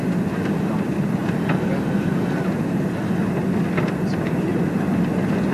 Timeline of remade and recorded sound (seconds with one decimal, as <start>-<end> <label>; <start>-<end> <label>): 0.0-5.5 recorded